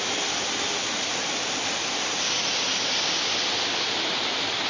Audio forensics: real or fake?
real